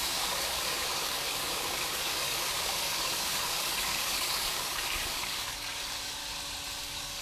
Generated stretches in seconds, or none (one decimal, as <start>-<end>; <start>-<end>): 0.0-6.2; 6.8-7.2